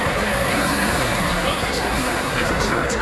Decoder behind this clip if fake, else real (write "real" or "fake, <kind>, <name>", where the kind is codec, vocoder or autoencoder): fake, codec, SNAC